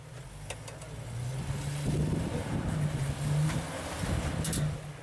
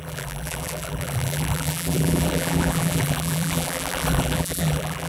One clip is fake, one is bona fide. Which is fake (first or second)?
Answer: second